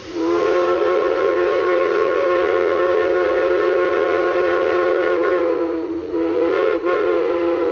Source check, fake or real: fake